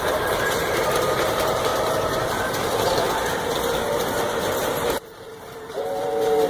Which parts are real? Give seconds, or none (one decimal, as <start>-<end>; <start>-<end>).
3.0-4.2